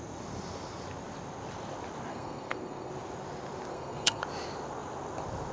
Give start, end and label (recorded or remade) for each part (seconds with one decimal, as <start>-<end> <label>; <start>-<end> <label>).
0.0-2.1 recorded; 2.1-2.9 remade; 2.9-3.7 recorded; 3.7-4.2 remade; 4.2-5.5 recorded